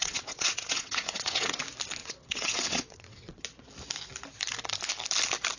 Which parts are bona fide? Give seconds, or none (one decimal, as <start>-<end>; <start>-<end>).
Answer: 1.6-2.0; 3.4-5.6